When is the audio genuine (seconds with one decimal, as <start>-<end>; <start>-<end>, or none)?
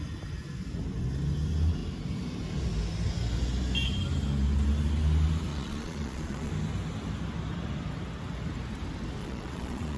0.0-5.5; 6.5-9.2